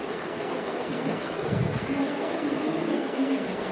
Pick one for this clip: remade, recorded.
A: remade